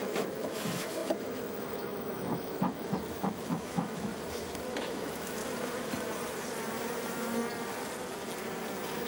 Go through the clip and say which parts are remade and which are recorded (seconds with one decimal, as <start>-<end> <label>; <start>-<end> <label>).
0.0-4.1 remade; 4.1-4.8 recorded; 4.8-5.4 remade; 5.4-9.1 recorded